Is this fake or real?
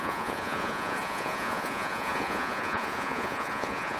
fake